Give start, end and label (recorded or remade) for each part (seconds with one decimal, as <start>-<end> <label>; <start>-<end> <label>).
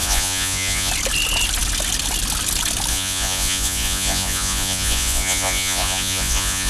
0.0-0.9 remade; 0.9-2.9 recorded; 2.9-6.7 remade